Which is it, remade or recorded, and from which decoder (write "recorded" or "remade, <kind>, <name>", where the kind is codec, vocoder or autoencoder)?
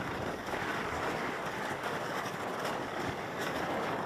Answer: remade, codec, DAC